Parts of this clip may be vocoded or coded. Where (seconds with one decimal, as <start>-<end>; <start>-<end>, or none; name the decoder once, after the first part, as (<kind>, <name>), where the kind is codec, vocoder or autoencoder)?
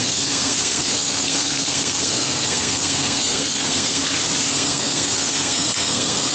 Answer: 0.0-4.0 (codec, SNAC); 4.5-6.3